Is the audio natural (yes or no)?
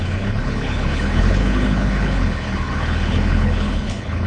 no